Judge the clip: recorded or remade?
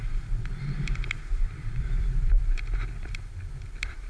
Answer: remade